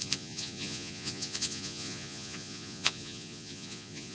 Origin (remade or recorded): remade